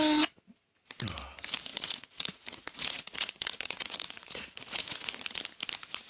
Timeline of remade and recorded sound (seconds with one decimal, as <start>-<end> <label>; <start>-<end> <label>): 0.0-1.7 recorded; 1.7-5.4 remade; 5.4-6.1 recorded